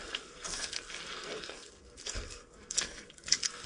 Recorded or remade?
remade